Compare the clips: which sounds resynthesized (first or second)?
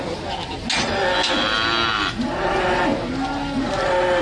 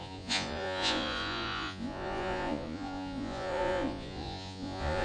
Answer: second